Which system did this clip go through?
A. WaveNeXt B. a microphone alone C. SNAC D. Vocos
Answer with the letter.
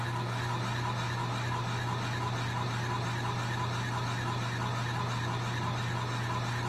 B